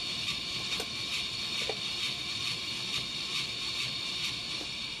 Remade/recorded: remade